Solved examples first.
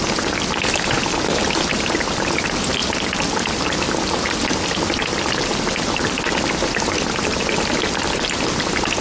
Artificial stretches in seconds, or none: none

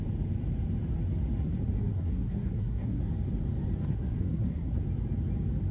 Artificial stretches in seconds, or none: 1.4-3.0 (codec, SNAC); 3.9-4.8

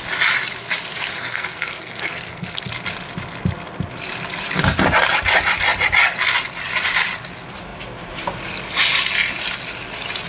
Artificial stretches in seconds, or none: 0.9-2.7 (codec, SNAC)

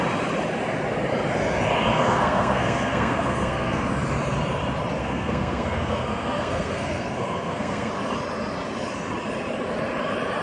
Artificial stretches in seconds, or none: 1.9-3.9 (codec, SNAC); 5.0-7.9

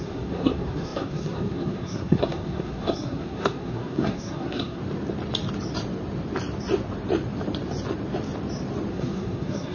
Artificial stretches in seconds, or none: 0.0-4.8 (codec, SNAC); 8.9-9.7

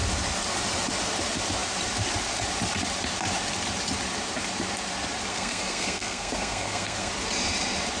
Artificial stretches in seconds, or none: 5.3-7.1 (codec, SNAC)